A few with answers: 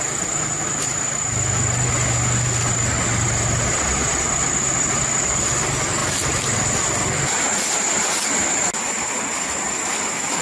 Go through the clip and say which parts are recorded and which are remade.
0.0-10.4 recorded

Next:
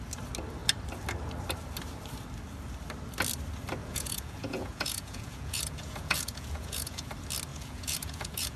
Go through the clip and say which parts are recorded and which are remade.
0.0-3.8 recorded; 3.8-7.1 remade; 7.1-7.5 recorded; 7.5-8.6 remade

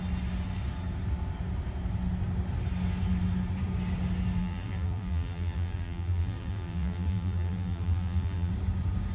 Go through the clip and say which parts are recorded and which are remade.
0.0-4.4 recorded; 4.4-8.5 remade; 8.5-9.1 recorded